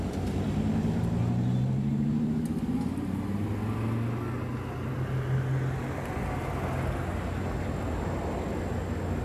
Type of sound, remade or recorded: recorded